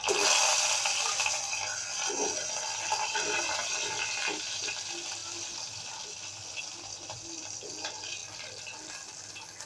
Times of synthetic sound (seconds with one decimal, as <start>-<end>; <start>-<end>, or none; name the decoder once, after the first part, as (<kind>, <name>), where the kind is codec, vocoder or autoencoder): none